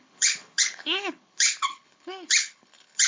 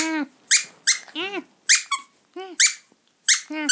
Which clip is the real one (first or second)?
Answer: second